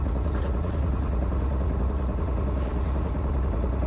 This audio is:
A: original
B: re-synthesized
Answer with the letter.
B